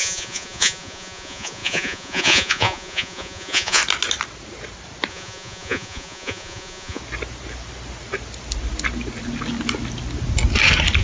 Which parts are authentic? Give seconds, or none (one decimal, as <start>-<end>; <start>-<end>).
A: 3.8-5.1; 7.0-11.0